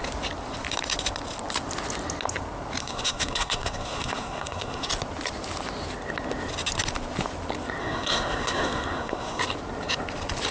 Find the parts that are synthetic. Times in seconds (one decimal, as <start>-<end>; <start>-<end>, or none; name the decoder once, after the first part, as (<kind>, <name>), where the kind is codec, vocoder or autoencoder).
2.8-4.9 (codec, SNAC); 7.8-9.4